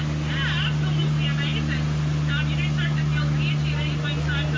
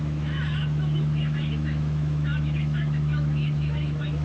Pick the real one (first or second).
first